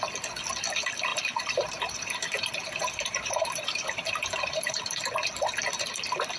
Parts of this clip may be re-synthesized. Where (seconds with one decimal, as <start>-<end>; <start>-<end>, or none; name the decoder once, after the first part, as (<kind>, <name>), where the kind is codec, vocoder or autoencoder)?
1.1-4.8 (vocoder, BigVGAN v2)

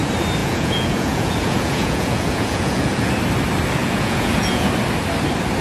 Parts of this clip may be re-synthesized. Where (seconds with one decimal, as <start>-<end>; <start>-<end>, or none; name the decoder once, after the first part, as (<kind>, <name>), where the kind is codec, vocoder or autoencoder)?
0.4-3.1 (vocoder, Vocos); 3.8-4.7

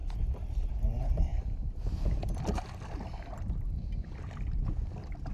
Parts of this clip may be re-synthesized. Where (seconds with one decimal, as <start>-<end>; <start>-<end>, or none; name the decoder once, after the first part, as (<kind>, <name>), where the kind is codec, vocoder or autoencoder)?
none

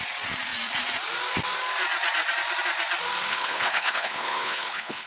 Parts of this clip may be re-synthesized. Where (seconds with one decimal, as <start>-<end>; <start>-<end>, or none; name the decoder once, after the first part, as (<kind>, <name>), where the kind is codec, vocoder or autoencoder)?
3.3-5.1 (codec, HILCodec)

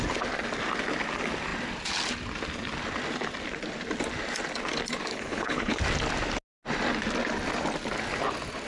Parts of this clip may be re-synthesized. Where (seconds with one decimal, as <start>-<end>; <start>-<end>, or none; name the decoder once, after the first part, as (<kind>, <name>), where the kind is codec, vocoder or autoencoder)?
5.1-5.8 (codec, HILCodec)

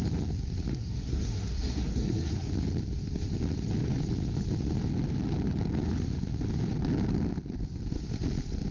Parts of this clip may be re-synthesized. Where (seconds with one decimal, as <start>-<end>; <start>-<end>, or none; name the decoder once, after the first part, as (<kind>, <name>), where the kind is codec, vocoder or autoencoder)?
0.7-2.5 (codec, SNAC)

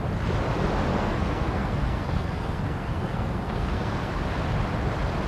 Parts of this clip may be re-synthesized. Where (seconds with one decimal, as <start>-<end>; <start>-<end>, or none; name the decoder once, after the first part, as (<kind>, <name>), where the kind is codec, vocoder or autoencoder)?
0.9-4.1 (codec, SNAC)